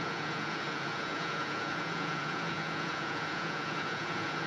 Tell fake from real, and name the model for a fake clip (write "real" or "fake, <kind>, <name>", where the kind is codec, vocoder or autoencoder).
fake, vocoder, Vocos